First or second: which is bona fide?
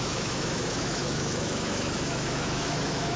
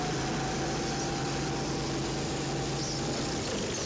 second